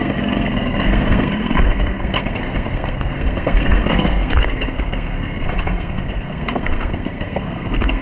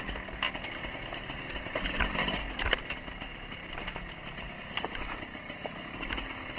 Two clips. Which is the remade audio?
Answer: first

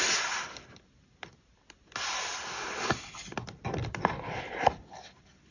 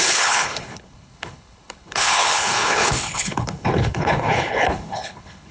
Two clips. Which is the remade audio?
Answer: second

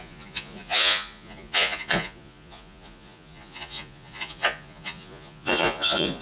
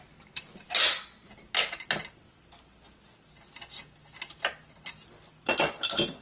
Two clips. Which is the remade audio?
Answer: first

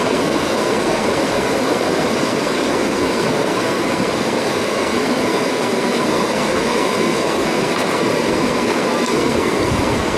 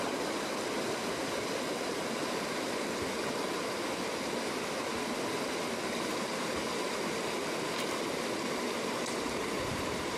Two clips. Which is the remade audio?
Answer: first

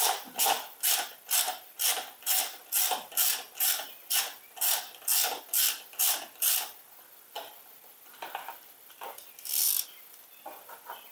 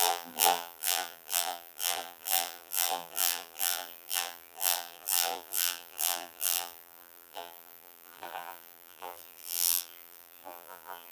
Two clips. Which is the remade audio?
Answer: second